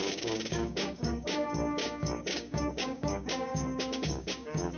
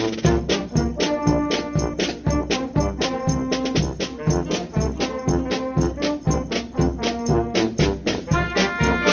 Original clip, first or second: second